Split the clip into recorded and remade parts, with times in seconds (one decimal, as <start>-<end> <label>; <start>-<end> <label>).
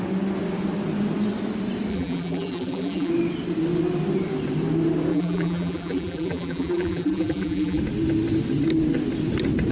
0.0-1.9 recorded; 1.9-3.1 remade; 3.1-5.1 recorded; 5.1-7.8 remade; 7.8-9.7 recorded